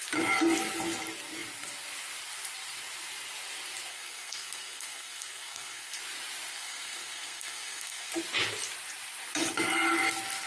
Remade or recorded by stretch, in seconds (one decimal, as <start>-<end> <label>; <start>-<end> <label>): 0.0-3.9 recorded; 3.9-6.0 remade; 6.0-6.5 recorded; 6.5-8.1 remade; 8.1-10.5 recorded